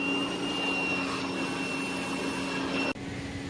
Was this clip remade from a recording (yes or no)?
no